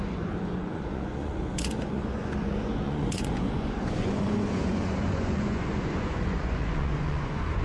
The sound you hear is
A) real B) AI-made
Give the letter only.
B